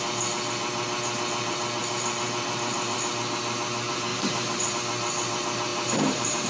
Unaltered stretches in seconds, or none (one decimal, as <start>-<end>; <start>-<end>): 0.0-1.8; 3.1-4.1; 4.7-5.7